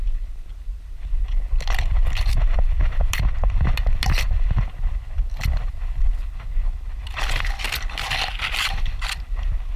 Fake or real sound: real